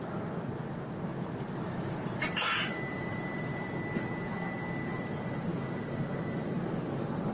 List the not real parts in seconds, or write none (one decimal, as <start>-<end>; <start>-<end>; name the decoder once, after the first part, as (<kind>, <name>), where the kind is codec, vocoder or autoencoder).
1.1-3.7 (vocoder, BigVGAN v2)

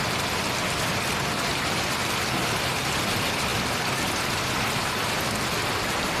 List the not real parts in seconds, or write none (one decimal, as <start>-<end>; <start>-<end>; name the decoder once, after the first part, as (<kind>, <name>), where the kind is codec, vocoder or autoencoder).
none

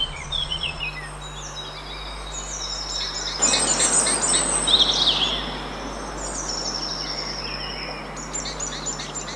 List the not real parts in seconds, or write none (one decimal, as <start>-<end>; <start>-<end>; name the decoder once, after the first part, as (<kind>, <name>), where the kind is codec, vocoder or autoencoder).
0.0-0.8 (vocoder, Vocos)

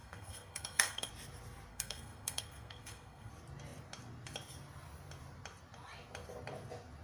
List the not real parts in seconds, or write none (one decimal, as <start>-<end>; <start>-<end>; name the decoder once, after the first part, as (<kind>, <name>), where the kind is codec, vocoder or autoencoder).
0.0-1.1 (codec, SNAC); 1.7-3.3

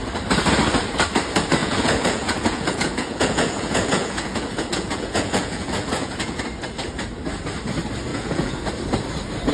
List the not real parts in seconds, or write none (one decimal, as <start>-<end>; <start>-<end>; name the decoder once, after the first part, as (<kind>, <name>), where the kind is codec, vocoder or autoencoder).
1.6-6.4 (vocoder, Vocos); 8.1-8.7

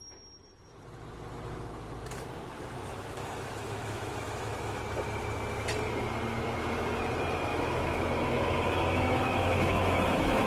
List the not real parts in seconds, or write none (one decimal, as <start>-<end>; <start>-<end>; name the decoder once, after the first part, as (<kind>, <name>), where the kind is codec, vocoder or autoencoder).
2.9-4.8 (autoencoder, DAC-VAE); 7.5-10.5

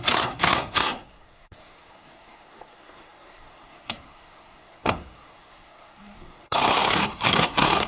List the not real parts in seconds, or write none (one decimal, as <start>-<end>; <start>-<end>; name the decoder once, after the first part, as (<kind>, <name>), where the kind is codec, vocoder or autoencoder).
0.0-7.9 (codec, SNAC)

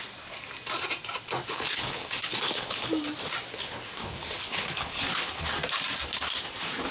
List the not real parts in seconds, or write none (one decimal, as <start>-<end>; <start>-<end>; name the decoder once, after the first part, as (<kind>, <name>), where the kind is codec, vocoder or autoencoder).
1.5-2.9 (codec, HILCodec); 3.5-5.5